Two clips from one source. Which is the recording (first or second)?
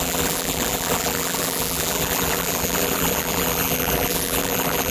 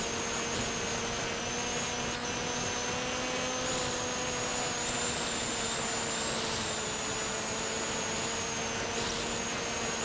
second